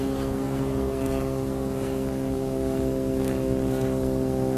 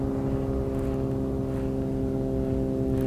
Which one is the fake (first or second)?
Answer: first